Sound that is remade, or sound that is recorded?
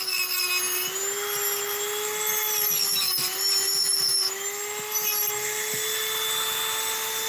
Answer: recorded